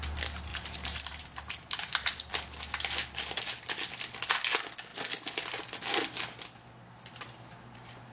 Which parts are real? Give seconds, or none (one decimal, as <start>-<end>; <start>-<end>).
0.0-0.5; 2.3-8.1

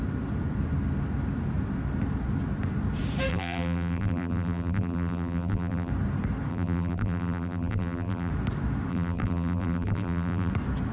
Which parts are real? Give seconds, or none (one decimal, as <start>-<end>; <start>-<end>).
0.0-3.3; 5.9-6.5; 8.3-8.9; 10.5-10.9

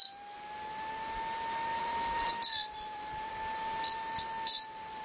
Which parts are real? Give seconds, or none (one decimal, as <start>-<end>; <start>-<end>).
0.0-1.7; 3.3-5.0

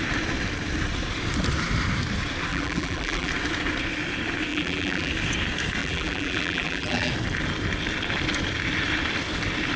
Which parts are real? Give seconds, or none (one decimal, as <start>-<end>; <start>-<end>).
0.0-2.5; 3.3-4.5; 5.1-5.8; 7.1-9.8

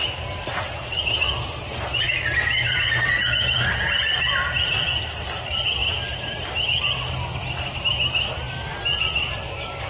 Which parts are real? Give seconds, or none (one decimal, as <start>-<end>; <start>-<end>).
0.0-9.9

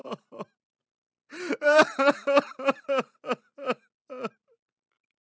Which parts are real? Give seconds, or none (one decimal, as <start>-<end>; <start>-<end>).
3.2-4.2